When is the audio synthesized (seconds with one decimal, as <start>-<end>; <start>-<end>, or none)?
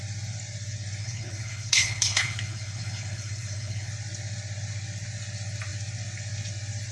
1.0-3.9